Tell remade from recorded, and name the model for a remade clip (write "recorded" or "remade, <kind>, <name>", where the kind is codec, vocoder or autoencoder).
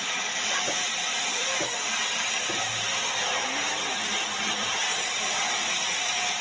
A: remade, vocoder, BigVGAN v2